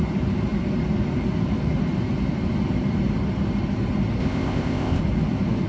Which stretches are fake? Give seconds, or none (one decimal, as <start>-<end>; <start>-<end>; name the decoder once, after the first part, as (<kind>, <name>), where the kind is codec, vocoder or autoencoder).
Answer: 4.2-5.0 (codec, ZipCodec)